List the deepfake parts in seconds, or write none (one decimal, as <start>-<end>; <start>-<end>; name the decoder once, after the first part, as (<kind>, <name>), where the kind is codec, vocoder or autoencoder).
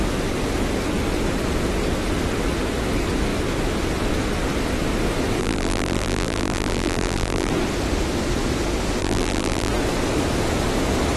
5.4-7.5 (vocoder, BigVGAN v2); 9.0-9.7